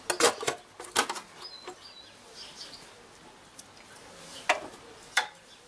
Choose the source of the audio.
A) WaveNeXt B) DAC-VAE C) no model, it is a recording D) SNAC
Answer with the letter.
C